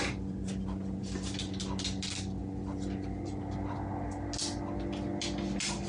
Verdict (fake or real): real